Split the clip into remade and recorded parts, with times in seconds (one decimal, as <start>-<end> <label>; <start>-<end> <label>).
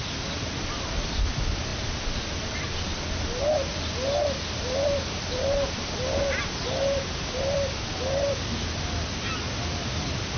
0.0-10.4 recorded